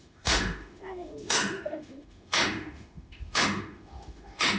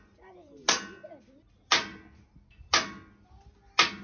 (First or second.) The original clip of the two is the second